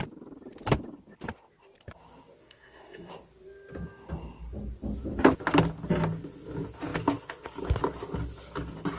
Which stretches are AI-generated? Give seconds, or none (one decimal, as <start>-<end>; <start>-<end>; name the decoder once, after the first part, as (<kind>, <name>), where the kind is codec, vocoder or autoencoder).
2.4-3.1 (codec, SNAC)